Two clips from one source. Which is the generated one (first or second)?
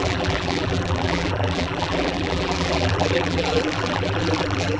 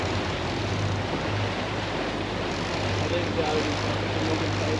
first